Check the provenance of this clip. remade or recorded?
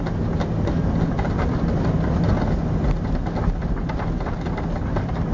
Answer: recorded